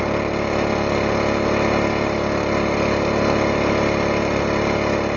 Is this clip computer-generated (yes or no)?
no